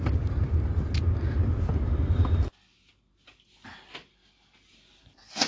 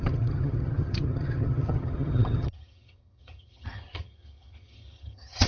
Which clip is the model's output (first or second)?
second